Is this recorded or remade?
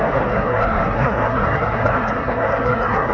remade